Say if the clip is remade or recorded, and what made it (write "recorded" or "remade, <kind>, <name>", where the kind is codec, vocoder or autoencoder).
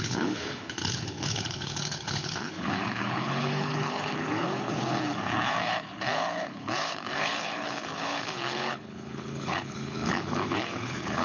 remade, codec, HILCodec